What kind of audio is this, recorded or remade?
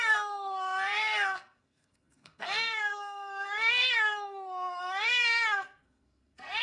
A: remade